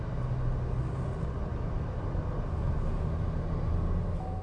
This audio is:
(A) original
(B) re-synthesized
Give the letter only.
A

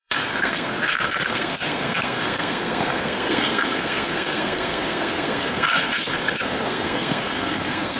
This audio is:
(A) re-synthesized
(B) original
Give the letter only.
A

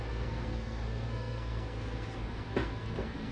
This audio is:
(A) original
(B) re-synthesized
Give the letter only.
B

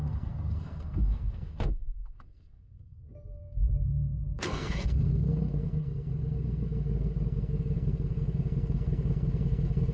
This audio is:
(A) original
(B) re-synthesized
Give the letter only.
B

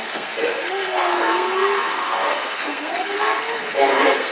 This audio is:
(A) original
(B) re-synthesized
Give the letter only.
B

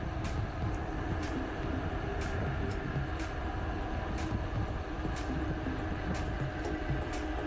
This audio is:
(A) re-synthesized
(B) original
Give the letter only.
B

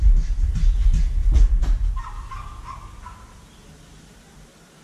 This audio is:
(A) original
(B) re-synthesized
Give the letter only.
A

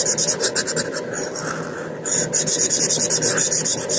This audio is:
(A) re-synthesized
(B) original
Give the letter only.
B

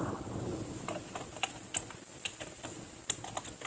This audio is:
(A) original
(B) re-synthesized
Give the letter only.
A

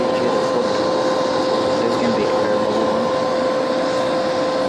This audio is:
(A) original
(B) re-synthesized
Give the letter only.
A